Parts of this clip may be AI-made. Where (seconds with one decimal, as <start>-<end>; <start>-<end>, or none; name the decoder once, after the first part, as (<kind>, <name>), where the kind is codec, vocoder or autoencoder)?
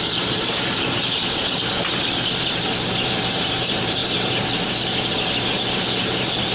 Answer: 0.0-1.7 (vocoder, BigVGAN v2); 3.3-4.0; 5.8-6.5